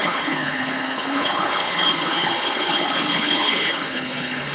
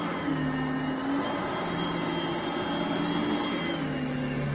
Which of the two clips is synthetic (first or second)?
first